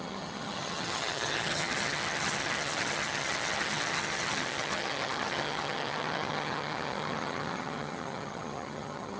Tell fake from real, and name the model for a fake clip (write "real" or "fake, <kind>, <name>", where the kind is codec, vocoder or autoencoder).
fake, vocoder, HiFi-GAN